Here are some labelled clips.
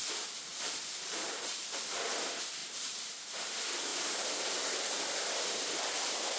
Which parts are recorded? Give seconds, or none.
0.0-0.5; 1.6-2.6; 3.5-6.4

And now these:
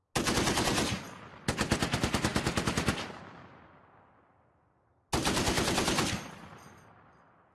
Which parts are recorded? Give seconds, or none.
0.0-2.3; 3.5-5.2; 6.5-7.5

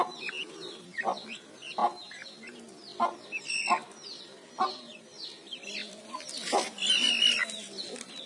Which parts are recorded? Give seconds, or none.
0.0-8.3

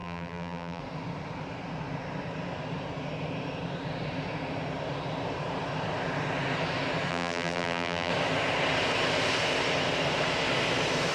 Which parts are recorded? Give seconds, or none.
0.8-7.1; 8.1-11.1